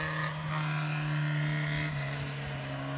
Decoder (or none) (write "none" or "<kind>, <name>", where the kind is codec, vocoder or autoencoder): none